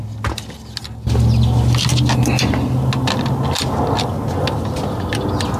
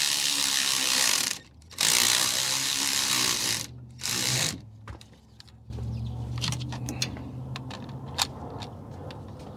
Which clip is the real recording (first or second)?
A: first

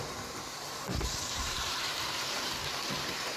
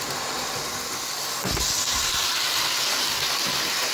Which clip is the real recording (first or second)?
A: second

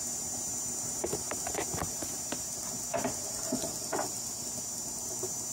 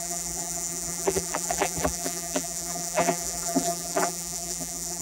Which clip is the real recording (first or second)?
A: first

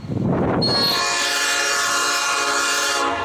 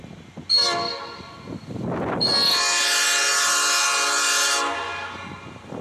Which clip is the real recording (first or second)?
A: second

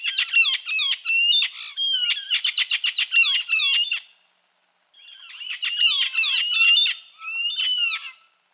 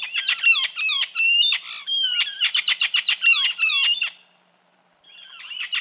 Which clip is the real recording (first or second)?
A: first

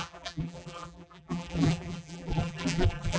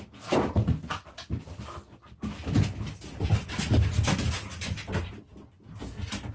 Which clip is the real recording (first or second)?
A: second